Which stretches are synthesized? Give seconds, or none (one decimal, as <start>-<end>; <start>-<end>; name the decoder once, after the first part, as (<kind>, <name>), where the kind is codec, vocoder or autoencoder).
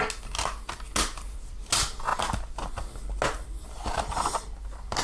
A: none